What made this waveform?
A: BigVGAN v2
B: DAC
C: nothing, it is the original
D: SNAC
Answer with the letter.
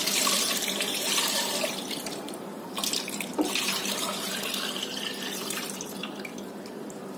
A